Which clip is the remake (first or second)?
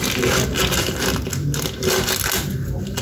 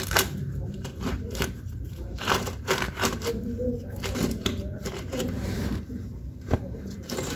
second